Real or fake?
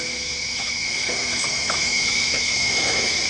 fake